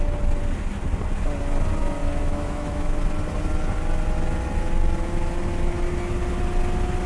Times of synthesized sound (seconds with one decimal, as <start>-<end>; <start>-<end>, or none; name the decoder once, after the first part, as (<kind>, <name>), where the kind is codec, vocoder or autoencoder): 2.0-3.0 (autoencoder, DAC-VAE)